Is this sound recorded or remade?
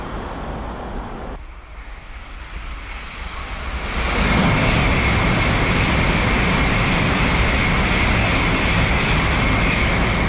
recorded